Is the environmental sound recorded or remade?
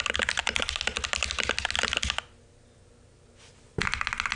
recorded